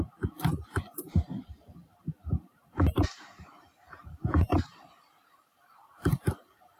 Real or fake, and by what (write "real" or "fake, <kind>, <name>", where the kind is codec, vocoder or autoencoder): fake, vocoder, BigVGAN v2